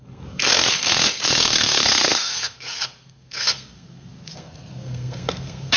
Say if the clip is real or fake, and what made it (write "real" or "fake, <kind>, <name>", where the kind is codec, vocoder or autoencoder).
fake, codec, SNAC